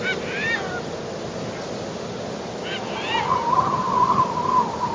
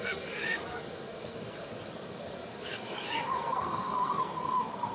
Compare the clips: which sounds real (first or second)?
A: first